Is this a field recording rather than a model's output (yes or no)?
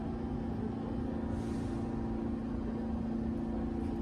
yes